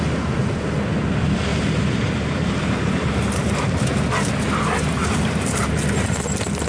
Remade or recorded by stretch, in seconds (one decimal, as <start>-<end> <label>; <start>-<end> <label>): 0.0-1.5 recorded; 1.5-4.3 remade; 4.3-5.0 recorded; 5.0-5.7 remade; 5.7-6.7 recorded